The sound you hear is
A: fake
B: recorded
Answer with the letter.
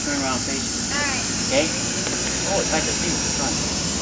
B